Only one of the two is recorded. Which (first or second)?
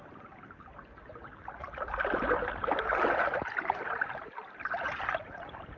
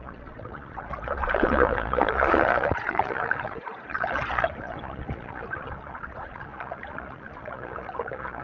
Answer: first